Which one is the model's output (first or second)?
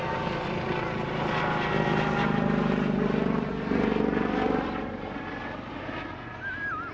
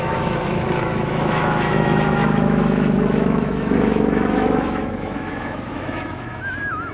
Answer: second